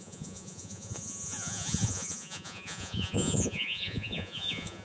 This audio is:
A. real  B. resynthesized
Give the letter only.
B